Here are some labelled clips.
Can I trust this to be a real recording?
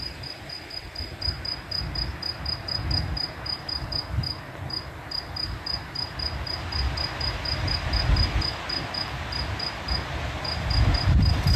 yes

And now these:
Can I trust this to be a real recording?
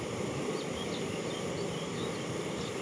yes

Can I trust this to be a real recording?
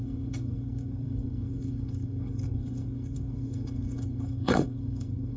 no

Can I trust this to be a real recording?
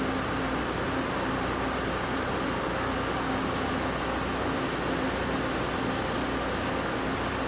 yes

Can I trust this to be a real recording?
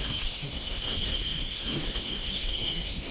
no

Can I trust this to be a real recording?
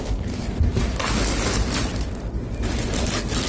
yes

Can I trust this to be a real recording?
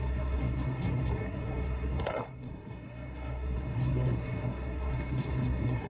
no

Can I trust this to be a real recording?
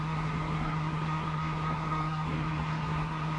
no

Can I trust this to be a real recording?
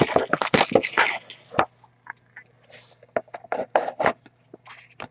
yes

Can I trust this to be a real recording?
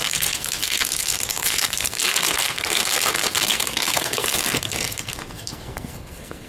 no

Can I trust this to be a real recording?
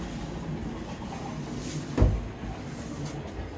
yes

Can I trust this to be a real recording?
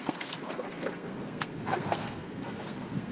no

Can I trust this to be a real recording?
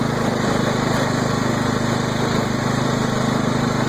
yes